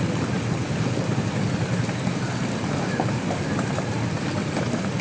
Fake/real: real